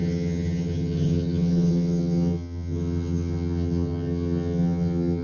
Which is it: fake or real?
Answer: fake